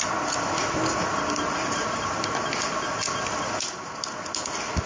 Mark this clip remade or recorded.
recorded